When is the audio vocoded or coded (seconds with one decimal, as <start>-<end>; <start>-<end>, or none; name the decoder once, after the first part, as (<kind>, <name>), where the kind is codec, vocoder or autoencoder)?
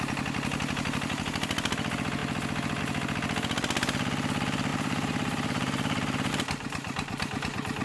4.7-6.3 (vocoder, BigVGAN v2)